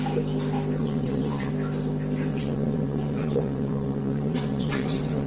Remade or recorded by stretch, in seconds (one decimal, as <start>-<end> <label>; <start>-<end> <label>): 0.0-0.8 recorded; 0.8-1.5 remade; 1.5-2.3 recorded; 2.3-5.3 remade